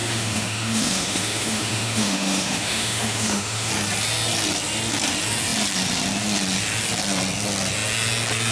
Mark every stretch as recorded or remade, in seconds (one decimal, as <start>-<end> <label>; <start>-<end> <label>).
0.0-3.7 remade; 3.7-8.5 recorded

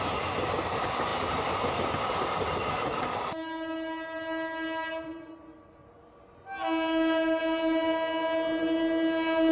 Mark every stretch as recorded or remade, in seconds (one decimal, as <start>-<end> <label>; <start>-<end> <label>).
0.0-9.5 recorded

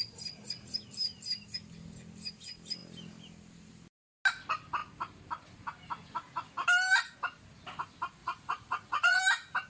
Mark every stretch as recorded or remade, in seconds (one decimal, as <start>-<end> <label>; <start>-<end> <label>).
0.0-8.2 recorded; 8.2-9.2 remade; 9.2-9.7 recorded

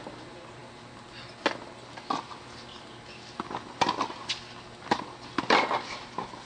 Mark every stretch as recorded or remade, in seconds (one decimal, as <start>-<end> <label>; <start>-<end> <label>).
0.0-6.5 recorded

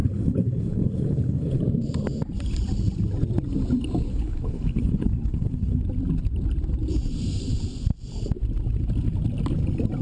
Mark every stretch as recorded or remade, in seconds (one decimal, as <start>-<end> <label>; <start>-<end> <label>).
0.0-1.6 remade; 1.6-4.1 recorded; 4.1-5.8 remade; 5.8-10.0 recorded

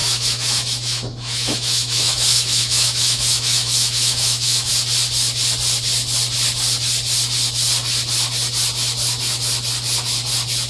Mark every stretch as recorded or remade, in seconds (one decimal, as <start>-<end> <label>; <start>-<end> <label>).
0.0-4.7 remade; 4.7-10.7 recorded